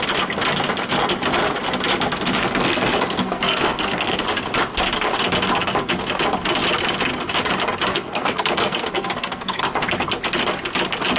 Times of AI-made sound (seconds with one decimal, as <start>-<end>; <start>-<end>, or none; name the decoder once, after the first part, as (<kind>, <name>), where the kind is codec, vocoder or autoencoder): 2.4-4.2 (codec, SNAC); 7.9-9.6